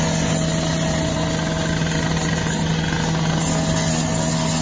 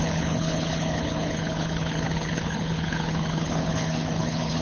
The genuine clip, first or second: first